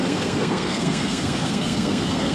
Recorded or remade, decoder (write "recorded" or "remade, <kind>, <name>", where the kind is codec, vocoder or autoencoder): remade, codec, SNAC